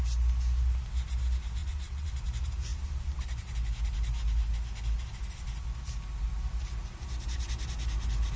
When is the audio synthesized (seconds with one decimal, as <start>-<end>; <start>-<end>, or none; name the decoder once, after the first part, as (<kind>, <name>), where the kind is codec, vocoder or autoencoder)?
1.6-2.1 (vocoder, WaveNeXt)